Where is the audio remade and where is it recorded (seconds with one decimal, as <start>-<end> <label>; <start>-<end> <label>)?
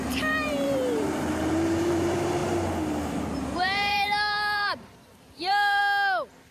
0.0-2.4 remade; 2.4-3.2 recorded; 3.2-5.8 remade; 5.8-6.5 recorded